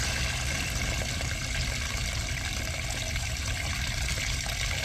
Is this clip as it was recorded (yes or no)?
yes